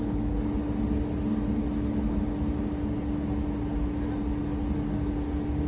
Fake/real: real